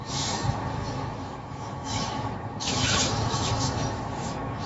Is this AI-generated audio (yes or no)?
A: yes